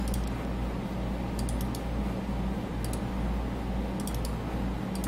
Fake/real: real